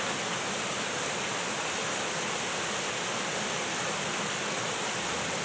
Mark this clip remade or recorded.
recorded